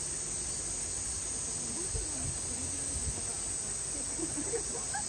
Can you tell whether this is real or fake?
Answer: real